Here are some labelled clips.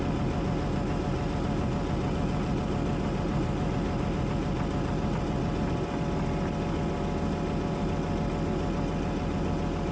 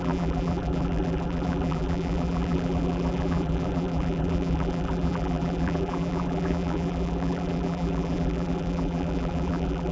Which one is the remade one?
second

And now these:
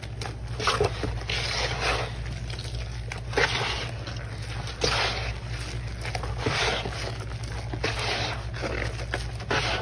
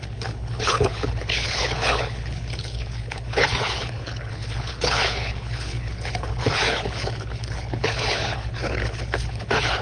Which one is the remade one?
second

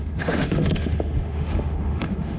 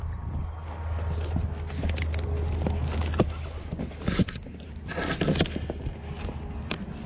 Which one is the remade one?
first